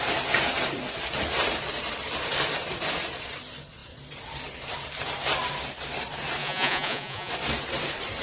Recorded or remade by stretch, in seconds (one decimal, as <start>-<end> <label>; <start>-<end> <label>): 0.0-6.4 recorded; 6.4-7.3 remade; 7.3-8.2 recorded